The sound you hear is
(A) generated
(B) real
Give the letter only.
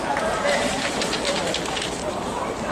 A